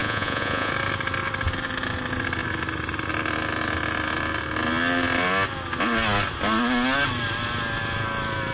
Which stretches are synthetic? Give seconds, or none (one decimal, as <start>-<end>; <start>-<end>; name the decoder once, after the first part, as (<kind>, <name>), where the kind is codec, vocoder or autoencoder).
0.0-0.7 (vocoder, Vocos)